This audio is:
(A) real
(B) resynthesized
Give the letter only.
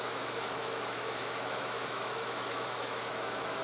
B